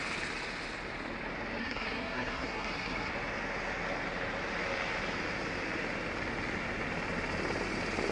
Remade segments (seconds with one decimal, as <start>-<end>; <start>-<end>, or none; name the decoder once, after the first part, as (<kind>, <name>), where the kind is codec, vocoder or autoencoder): 1.6-3.1 (codec, SNAC)